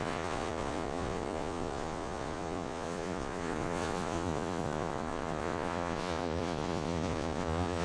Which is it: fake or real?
fake